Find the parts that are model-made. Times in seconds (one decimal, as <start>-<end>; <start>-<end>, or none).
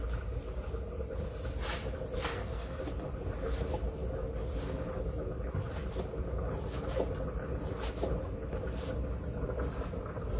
2.3-2.8